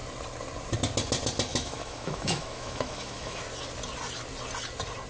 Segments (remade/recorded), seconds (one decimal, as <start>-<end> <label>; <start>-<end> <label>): 0.0-1.5 recorded; 1.5-3.4 remade; 3.4-5.1 recorded